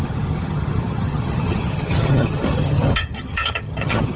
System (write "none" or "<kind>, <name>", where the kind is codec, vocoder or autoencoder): vocoder, HiFi-GAN